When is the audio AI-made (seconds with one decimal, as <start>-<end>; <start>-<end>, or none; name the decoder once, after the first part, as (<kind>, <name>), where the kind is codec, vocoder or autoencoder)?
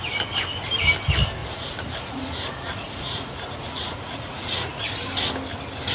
1.4-4.8 (vocoder, Vocos)